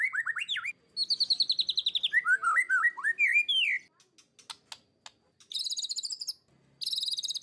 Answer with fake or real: real